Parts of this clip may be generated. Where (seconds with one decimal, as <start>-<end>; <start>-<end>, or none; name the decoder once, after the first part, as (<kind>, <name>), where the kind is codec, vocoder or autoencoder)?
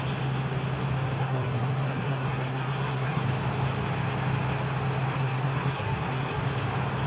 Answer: 1.2-3.3 (codec, SNAC); 5.2-6.4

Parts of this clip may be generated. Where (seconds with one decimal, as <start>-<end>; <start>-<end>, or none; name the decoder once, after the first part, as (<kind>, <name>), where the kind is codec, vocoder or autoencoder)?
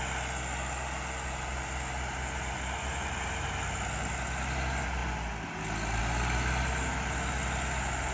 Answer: none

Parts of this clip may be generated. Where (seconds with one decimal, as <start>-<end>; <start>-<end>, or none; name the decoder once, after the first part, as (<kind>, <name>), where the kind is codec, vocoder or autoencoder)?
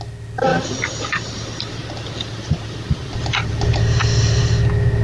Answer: none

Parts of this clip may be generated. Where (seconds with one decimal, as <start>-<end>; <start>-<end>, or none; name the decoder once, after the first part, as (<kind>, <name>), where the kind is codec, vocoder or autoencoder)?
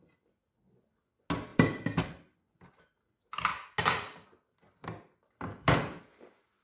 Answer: none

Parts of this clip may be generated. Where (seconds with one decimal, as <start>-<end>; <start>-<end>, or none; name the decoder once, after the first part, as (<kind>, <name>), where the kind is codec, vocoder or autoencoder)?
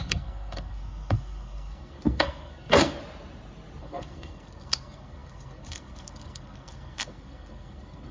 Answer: 0.0-3.0 (codec, SNAC); 3.8-8.1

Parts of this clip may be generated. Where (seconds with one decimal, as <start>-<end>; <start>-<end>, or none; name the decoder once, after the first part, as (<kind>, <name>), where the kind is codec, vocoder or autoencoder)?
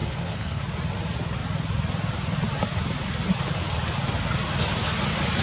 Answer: 0.0-0.6 (codec, SNAC)